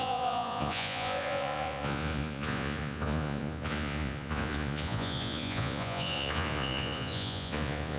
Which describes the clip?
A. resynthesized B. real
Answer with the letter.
A